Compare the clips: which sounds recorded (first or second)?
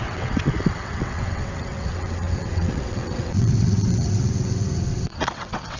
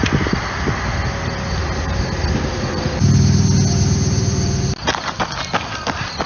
second